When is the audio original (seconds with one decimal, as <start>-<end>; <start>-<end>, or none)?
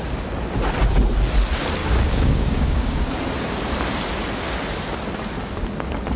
0.0-1.8; 3.1-6.2